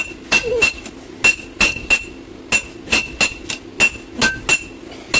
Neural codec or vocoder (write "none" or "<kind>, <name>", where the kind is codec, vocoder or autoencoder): none